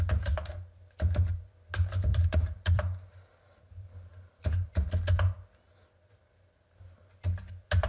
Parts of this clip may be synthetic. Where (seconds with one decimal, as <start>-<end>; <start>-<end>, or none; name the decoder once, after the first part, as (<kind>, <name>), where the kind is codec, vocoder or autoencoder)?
2.1-4.7 (vocoder, BigVGAN v2)